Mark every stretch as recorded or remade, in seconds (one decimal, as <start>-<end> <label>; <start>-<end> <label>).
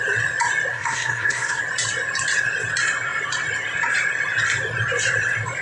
0.0-0.7 recorded; 0.7-1.6 remade; 1.6-5.6 recorded